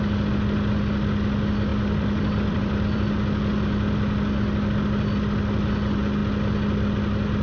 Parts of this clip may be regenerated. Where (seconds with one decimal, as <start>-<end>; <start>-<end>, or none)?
1.7-3.1